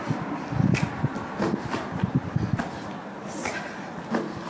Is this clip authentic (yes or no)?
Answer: yes